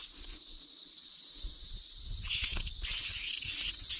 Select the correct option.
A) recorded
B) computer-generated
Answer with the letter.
B